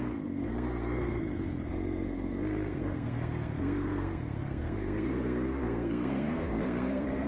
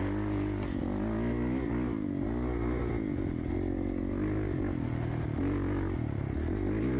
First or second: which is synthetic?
first